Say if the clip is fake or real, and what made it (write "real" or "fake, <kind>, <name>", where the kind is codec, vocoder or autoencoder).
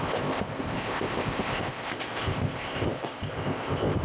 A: fake, codec, ZipCodec